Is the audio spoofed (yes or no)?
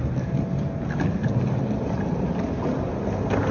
no